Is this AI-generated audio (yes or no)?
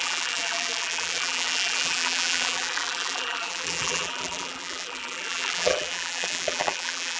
yes